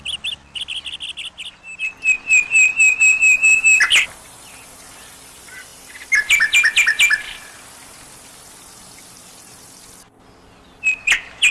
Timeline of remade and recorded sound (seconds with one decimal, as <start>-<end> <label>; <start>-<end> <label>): 0.0-2.7 recorded; 2.7-3.8 remade; 3.8-11.5 recorded